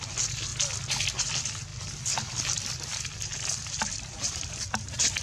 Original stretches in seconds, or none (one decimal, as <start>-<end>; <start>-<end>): 0.0-1.7; 4.5-5.2